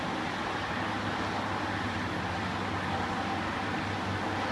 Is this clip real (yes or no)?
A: yes